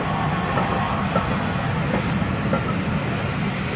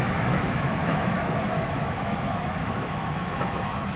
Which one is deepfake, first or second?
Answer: second